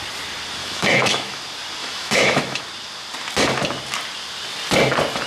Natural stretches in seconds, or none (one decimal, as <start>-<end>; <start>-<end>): 0.0-0.6; 1.4-1.8; 2.6-5.3